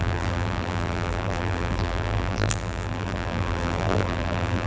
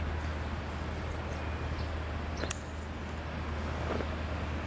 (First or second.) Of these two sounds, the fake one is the first